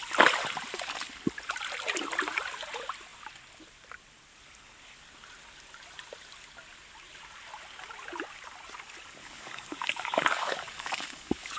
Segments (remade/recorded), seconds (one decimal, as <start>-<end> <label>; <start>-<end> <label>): 0.0-9.2 recorded; 9.2-11.6 remade